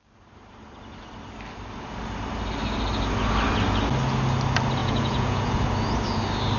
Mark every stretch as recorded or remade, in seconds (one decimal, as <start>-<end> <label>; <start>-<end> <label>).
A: 0.0-4.8 recorded; 4.8-5.6 remade; 5.6-6.6 recorded